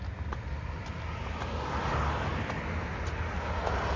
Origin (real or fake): real